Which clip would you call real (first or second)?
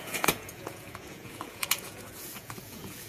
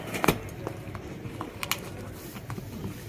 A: second